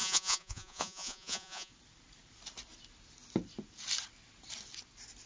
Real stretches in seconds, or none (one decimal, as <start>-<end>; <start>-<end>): 1.7-5.3